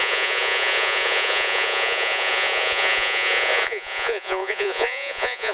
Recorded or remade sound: remade